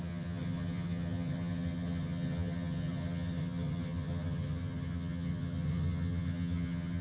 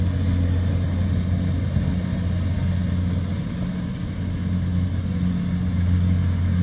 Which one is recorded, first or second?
second